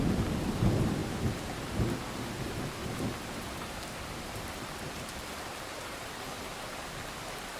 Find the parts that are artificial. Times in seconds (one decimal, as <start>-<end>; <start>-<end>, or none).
2.8-6.1